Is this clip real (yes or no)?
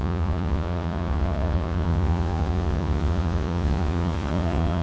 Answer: no